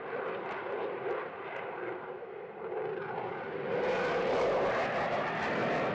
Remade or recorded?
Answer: remade